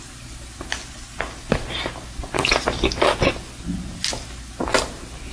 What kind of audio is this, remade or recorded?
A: recorded